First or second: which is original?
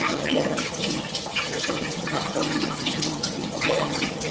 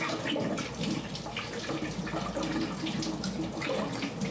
second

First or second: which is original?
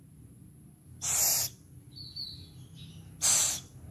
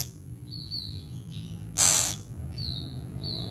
first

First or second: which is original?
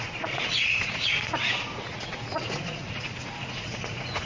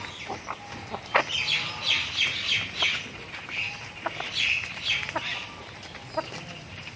second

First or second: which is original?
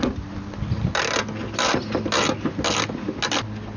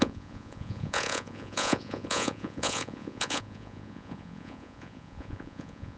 first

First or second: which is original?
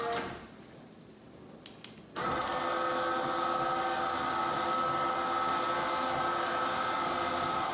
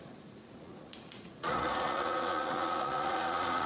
first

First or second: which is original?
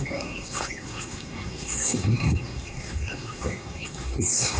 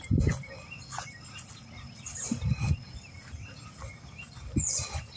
second